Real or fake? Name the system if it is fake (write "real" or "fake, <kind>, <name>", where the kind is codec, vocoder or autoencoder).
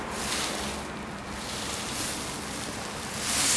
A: real